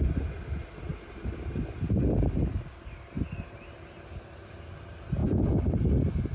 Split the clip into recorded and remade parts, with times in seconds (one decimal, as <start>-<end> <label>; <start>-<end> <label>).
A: 0.0-6.3 recorded